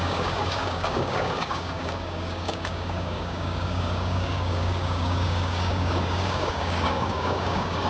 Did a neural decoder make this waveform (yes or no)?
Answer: yes